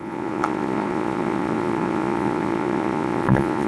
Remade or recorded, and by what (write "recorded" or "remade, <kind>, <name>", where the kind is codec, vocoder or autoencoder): remade, vocoder, Vocos